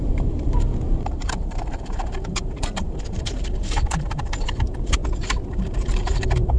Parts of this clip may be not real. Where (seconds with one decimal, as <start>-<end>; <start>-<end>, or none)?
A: 0.0-5.0; 5.5-6.6